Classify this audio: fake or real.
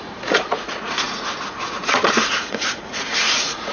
fake